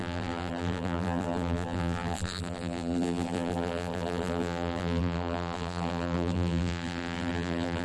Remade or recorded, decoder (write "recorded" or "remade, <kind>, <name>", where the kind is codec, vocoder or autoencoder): remade, vocoder, BigVGAN v2